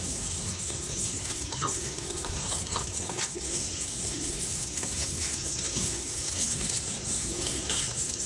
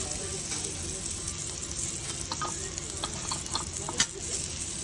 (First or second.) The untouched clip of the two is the second